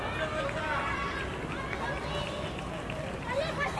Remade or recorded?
recorded